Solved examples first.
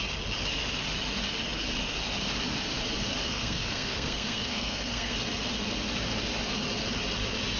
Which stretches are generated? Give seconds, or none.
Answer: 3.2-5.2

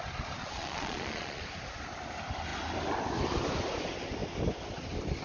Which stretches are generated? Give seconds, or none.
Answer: 0.4-1.4

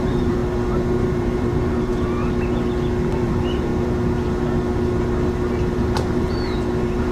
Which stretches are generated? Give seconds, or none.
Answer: 0.0-0.4; 1.1-1.9; 3.1-3.7; 5.7-7.1

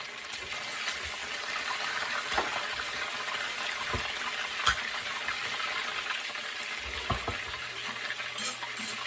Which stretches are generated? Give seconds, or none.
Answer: none

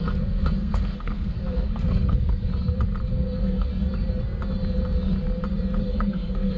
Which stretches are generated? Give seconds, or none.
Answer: 0.0-2.5; 3.1-3.7; 5.8-6.6

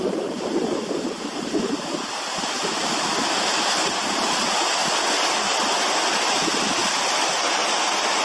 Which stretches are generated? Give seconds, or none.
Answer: none